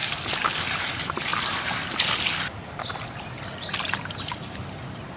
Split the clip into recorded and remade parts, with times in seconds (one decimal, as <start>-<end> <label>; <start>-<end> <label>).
0.0-0.7 recorded; 0.7-1.3 remade; 1.3-4.4 recorded; 4.4-5.2 remade